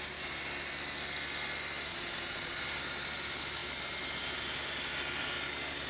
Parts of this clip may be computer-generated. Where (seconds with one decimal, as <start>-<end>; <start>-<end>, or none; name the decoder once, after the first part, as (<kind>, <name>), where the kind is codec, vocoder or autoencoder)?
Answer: 1.9-2.6 (vocoder, Vocos)

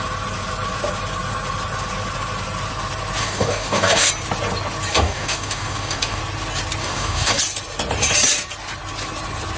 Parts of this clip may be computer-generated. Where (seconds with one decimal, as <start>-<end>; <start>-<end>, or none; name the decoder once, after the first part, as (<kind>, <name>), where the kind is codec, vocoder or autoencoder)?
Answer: 3.2-4.1 (codec, DAC); 4.9-6.2; 6.8-7.4

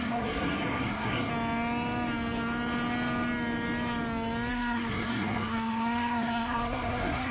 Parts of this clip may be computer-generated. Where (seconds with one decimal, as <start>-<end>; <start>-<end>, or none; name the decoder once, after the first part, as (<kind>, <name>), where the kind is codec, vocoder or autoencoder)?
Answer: 0.0-1.3 (codec, SNAC); 4.5-7.3

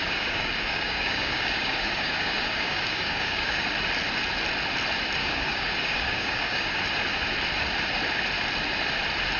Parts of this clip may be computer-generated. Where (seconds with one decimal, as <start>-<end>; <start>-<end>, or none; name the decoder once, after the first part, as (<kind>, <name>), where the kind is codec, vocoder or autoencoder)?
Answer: 0.0-3.7 (codec, DAC); 5.2-6.8

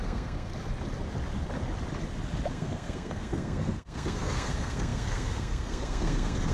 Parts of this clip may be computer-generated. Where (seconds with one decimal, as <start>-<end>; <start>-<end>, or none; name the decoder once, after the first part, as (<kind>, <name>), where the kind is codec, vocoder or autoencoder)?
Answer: 0.0-0.5 (codec, SNAC); 2.5-6.5

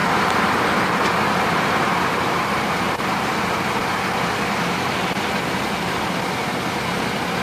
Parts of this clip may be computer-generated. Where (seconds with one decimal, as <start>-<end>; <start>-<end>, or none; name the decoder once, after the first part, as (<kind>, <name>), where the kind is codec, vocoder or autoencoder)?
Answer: 0.0-4.0 (vocoder, BigVGAN v2)

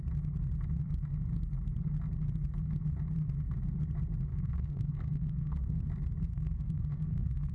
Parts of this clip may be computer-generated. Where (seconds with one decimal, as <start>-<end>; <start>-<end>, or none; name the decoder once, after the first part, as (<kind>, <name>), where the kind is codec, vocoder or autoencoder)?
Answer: 4.3-5.8 (codec, SNAC); 6.3-7.5

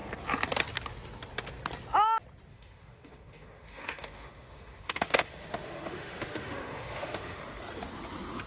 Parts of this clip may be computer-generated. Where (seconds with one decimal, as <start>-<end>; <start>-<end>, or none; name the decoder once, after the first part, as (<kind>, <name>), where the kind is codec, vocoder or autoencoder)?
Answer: 2.5-7.4 (autoencoder, DAC-VAE)